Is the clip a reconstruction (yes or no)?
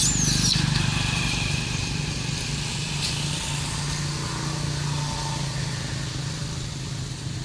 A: no